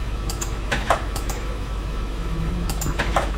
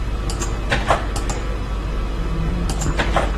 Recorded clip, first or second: second